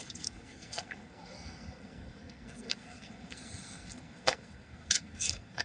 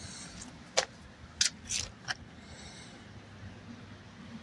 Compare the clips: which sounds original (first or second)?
second